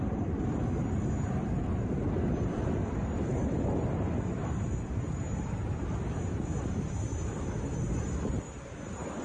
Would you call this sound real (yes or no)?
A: yes